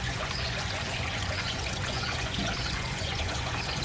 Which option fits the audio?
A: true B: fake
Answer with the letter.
B